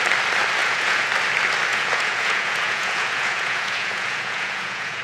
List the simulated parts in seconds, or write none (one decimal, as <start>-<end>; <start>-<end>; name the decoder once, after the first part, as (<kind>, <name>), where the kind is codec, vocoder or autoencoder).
0.6-1.1 (vocoder, Vocos); 1.7-5.0